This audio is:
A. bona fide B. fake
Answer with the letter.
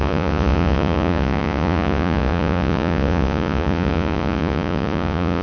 B